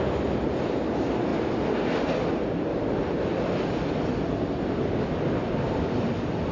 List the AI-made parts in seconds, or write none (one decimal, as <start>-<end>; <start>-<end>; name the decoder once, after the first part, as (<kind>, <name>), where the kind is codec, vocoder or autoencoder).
none